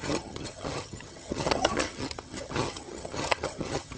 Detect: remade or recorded remade